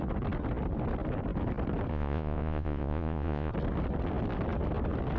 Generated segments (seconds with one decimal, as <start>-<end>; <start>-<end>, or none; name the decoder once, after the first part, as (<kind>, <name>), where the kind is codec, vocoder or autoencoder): 1.9-3.5 (vocoder, Vocos)